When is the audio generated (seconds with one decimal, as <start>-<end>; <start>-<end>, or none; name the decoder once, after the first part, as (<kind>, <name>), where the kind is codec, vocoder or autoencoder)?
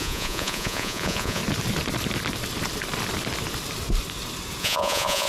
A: 0.0-1.4 (vocoder, Vocos); 4.6-5.3